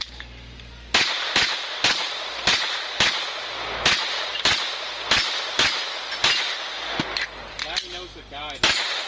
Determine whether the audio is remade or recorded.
recorded